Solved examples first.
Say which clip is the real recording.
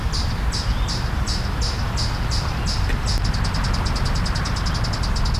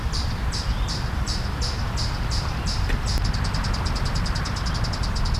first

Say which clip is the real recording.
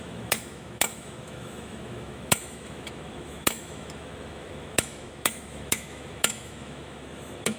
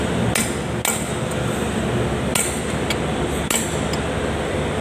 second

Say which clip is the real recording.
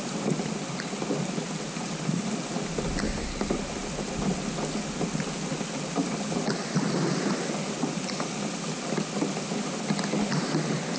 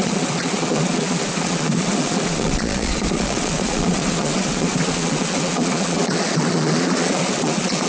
first